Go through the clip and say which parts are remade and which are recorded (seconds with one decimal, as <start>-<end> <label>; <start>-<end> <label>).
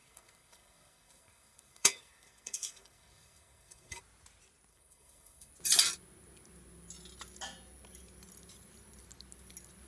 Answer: 0.0-4.0 remade; 4.0-4.7 recorded; 4.7-5.5 remade; 5.5-9.9 recorded